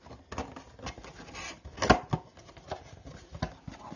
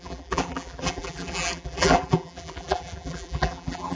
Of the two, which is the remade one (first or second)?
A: second